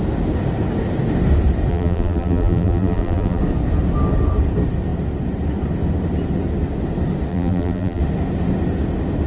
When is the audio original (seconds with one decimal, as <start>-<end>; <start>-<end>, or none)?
0.0-1.7; 3.4-7.3; 8.0-9.3